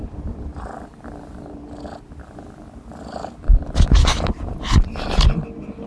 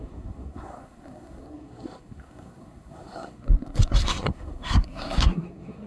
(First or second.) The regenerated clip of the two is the second